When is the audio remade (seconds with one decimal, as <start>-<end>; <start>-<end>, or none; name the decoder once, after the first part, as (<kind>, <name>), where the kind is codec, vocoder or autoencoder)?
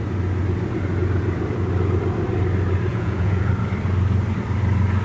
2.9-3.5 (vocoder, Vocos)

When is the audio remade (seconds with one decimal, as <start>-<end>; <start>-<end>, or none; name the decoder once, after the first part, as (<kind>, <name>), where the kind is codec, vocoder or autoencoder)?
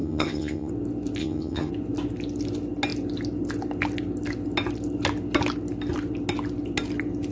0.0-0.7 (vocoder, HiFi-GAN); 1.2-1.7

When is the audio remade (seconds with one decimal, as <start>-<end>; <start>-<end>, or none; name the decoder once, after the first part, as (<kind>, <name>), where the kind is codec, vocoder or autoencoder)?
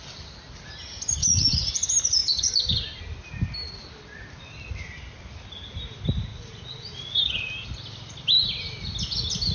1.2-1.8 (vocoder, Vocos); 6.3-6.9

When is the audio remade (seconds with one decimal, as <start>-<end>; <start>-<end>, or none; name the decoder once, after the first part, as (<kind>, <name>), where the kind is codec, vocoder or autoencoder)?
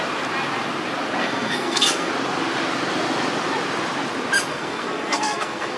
1.2-2.1 (codec, SNAC); 4.5-5.8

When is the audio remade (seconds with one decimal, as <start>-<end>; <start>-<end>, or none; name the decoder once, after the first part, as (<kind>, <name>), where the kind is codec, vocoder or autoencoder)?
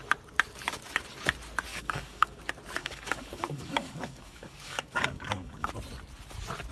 1.7-2.4 (codec, DAC); 2.8-5.7